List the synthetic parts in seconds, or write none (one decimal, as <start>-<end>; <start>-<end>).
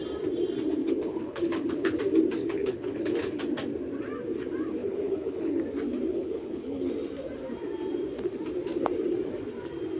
0.8-2.0; 2.4-3.4; 4.8-5.6; 6.1-6.9